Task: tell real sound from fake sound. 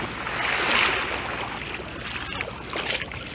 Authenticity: real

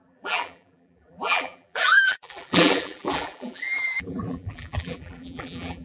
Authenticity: fake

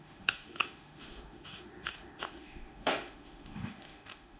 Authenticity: fake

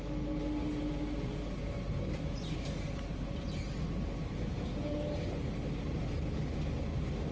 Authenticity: real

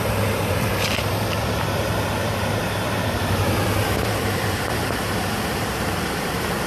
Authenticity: fake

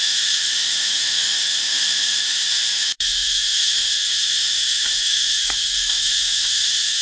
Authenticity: fake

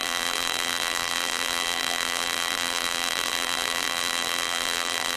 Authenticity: fake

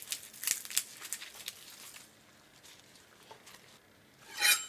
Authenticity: real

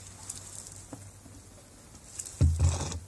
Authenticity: real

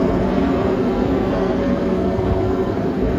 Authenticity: fake